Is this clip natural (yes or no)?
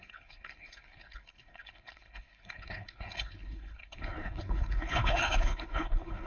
no